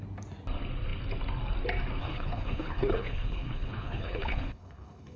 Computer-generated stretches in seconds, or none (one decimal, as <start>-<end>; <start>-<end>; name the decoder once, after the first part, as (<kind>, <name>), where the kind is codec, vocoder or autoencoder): 2.0-5.2 (codec, HILCodec)